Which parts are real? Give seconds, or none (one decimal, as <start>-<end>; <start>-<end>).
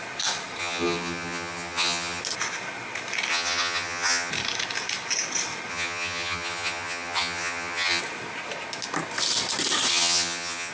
0.0-0.6; 2.2-3.3; 4.3-5.7; 8.0-9.9